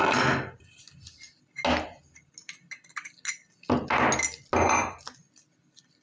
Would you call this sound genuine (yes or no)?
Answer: yes